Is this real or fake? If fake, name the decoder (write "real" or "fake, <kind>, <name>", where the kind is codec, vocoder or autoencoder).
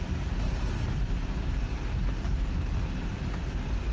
real